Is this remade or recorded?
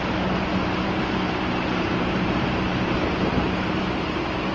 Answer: remade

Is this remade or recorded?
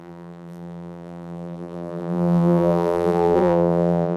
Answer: remade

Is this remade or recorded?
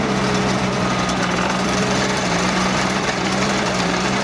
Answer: remade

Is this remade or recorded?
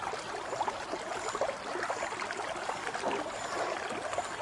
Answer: remade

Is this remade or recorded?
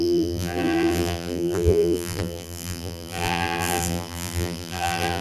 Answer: remade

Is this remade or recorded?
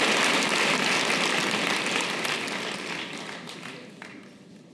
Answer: recorded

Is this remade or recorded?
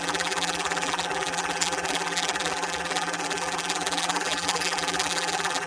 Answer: remade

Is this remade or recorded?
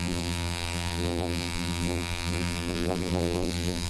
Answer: remade